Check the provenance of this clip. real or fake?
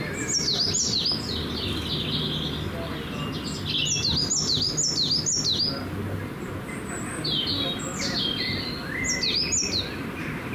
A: real